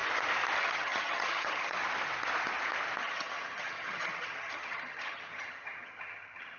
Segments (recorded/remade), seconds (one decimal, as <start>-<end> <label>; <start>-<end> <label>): 0.0-0.6 recorded; 0.6-1.8 remade; 1.8-3.0 recorded; 3.0-6.6 remade